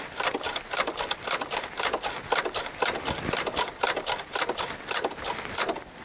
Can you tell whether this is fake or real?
real